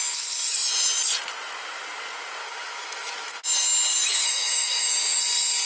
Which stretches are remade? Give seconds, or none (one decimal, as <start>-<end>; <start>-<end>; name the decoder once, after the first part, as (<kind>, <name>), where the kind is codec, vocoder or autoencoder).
2.4-3.4 (autoencoder, DAC-VAE); 3.9-5.2